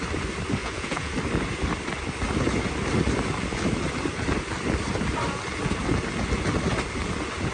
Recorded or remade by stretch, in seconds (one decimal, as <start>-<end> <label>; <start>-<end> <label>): 0.0-0.6 recorded; 0.6-1.1 remade; 1.1-7.5 recorded